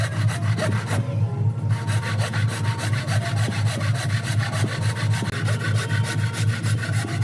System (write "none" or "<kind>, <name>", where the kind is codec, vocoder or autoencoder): none